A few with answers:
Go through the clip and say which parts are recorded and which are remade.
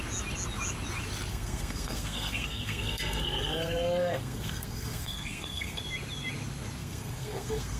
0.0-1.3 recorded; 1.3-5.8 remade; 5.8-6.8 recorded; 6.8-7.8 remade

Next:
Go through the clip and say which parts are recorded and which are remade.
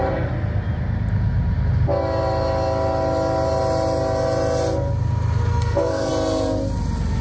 0.0-5.5 recorded; 5.5-6.1 remade; 6.1-7.2 recorded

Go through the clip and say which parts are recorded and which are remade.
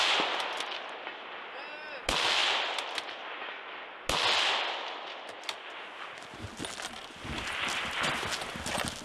0.0-9.0 recorded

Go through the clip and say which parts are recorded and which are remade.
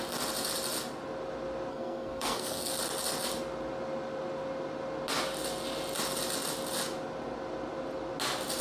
0.0-1.7 recorded; 1.7-2.7 remade; 2.7-8.6 recorded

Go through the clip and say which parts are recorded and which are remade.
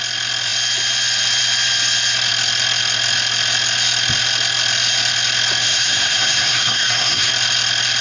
0.0-5.6 recorded; 5.6-7.3 remade; 7.3-8.0 recorded